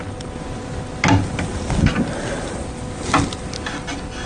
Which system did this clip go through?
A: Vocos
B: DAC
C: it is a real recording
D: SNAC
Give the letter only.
C